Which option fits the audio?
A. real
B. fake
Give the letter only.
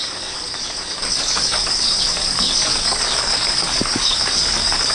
B